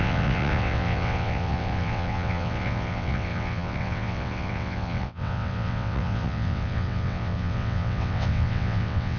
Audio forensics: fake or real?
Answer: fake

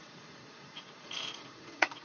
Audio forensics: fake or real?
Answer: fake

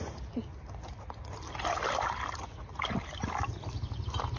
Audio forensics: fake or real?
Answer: real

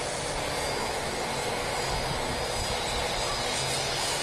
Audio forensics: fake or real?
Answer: real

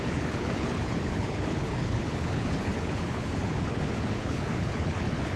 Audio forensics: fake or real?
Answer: fake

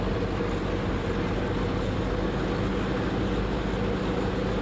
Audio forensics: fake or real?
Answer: real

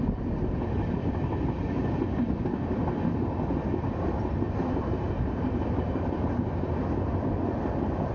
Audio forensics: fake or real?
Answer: real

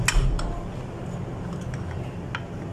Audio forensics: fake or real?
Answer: real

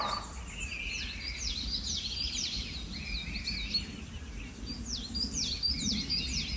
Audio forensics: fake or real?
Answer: real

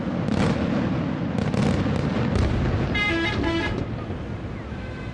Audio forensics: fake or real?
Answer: real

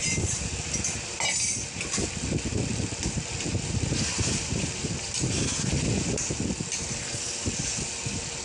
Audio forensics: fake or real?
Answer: real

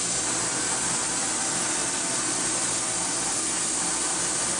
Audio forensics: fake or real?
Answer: real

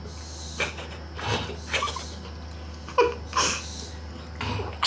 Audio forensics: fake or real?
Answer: real